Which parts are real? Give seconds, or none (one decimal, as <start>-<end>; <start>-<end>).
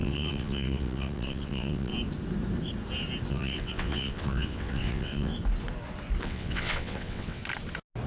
1.9-3.3; 5.3-6.2; 7.4-8.1